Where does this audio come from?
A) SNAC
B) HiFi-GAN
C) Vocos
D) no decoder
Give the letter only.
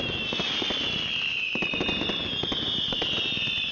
D